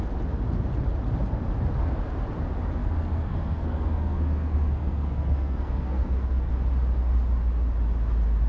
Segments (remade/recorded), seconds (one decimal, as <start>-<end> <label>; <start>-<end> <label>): 0.0-2.8 recorded; 2.8-6.5 remade; 6.5-8.5 recorded